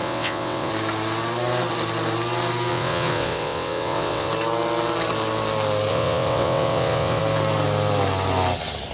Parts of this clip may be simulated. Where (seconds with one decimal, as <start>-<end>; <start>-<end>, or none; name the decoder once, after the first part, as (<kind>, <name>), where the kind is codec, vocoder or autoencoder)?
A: 0.0-0.7 (vocoder, WaveNeXt); 2.7-4.3; 5.9-7.2